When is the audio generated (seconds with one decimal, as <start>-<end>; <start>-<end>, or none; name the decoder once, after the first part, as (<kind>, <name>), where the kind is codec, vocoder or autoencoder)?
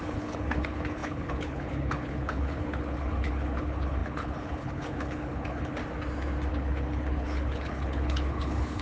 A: 0.0-5.8 (codec, HILCodec); 6.5-8.8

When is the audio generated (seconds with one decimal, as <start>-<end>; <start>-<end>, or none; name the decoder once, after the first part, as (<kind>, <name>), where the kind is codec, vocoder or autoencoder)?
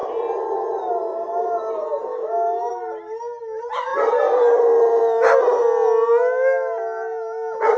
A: 2.1-2.7 (autoencoder, DAC-VAE)